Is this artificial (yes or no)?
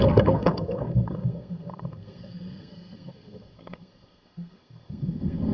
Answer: yes